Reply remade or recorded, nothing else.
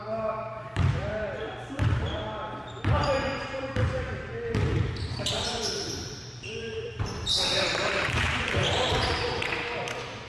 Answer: remade